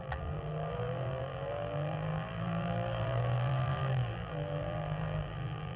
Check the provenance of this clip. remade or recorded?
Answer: remade